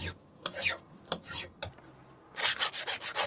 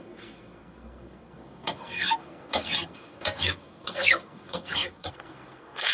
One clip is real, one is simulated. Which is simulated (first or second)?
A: second